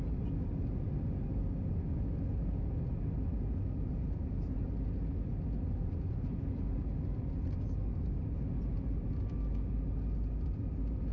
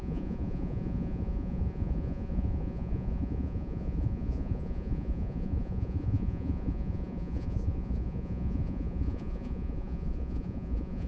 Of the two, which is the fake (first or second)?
second